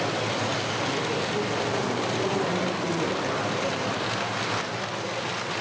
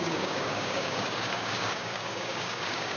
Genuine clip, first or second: first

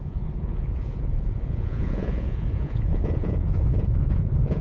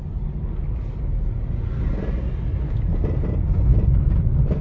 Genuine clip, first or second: second